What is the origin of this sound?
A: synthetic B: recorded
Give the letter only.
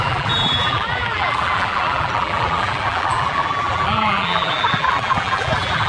A